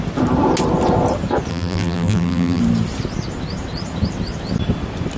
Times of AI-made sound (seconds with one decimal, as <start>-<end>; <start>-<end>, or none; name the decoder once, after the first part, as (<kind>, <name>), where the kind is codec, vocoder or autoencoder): 1.5-2.6 (vocoder, BigVGAN v2)